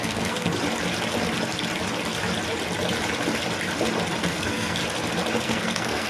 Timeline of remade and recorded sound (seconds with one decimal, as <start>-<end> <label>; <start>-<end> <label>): 0.0-0.5 remade; 0.5-4.2 recorded; 4.2-4.8 remade; 4.8-5.4 recorded; 5.4-6.1 remade